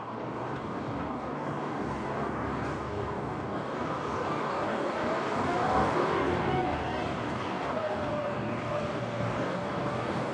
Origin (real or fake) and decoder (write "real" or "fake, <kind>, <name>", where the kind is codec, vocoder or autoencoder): fake, codec, DAC